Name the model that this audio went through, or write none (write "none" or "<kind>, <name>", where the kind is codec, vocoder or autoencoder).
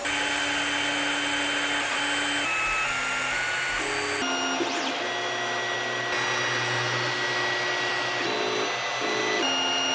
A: none